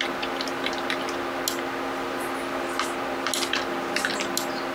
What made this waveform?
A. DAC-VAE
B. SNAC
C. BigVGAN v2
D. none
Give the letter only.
D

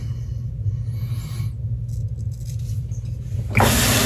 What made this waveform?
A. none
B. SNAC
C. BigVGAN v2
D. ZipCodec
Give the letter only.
A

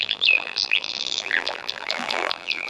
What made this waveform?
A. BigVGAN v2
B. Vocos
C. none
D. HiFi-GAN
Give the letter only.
A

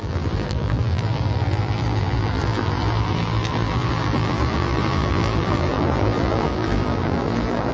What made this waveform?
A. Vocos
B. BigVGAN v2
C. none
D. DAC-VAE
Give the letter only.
B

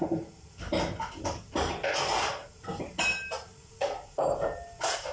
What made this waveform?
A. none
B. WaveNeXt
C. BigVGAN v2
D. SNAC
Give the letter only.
A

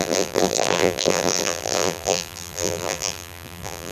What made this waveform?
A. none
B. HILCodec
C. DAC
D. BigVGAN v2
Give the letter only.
D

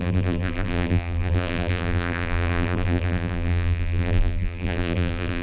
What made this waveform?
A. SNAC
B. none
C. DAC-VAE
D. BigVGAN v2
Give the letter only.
D